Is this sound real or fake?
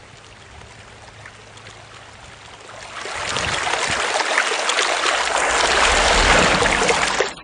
real